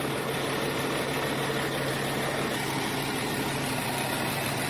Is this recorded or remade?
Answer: recorded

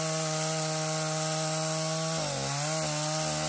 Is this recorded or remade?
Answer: recorded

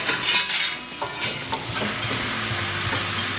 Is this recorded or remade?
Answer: recorded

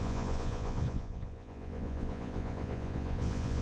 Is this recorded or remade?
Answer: remade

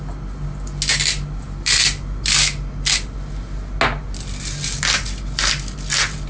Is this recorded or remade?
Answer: recorded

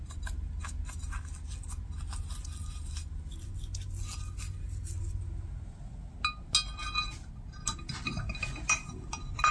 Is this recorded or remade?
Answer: recorded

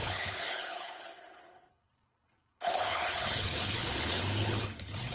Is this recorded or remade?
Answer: remade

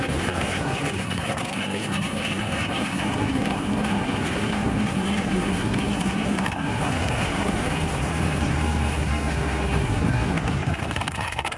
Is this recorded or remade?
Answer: remade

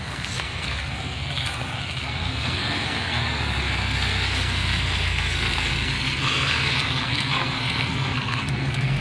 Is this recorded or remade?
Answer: remade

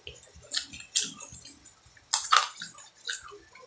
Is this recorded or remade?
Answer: recorded